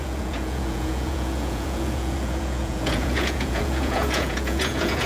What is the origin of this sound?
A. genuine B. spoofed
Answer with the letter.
B